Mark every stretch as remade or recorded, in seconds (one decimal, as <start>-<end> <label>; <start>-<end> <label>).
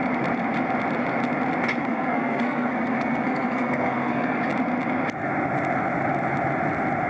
0.0-1.8 recorded; 1.8-4.4 remade; 4.4-7.1 recorded